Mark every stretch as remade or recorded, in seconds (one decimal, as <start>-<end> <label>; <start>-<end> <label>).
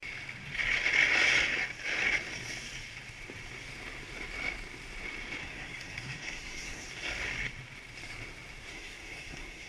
0.0-5.4 recorded; 5.4-6.8 remade; 6.8-8.7 recorded; 8.7-9.7 remade